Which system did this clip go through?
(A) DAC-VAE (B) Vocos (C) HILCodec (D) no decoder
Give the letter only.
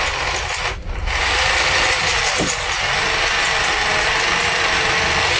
D